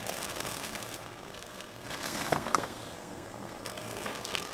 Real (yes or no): no